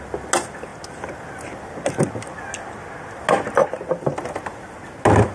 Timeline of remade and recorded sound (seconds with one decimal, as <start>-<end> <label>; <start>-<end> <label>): 0.0-5.3 recorded